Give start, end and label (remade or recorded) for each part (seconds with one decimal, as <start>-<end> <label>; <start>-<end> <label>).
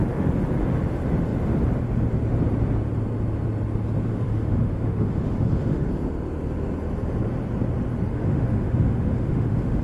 0.0-4.1 recorded; 4.1-5.9 remade; 5.9-8.1 recorded; 8.1-9.8 remade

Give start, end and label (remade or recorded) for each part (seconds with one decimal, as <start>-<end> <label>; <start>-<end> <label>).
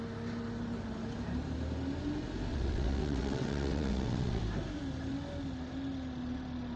0.0-2.5 recorded; 2.5-4.4 remade; 4.4-6.8 recorded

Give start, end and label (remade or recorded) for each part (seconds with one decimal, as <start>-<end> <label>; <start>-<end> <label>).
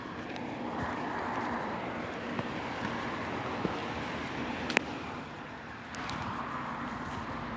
0.0-7.6 remade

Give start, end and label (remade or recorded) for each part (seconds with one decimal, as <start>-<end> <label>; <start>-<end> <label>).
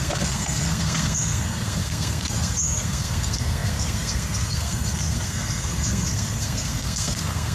0.0-7.5 remade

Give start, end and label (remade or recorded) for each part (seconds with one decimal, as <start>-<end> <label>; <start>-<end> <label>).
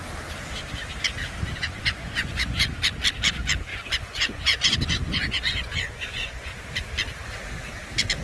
0.0-1.6 recorded; 1.6-2.7 remade; 2.7-3.7 recorded; 3.7-6.5 remade; 6.5-8.2 recorded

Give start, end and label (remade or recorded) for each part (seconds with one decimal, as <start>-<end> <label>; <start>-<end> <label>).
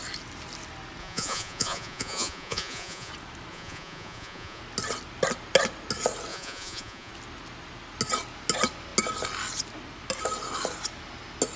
0.0-1.0 recorded; 1.0-3.1 remade; 3.1-3.5 recorded; 3.5-4.6 remade; 4.6-6.3 recorded; 6.3-7.1 remade; 7.1-11.6 recorded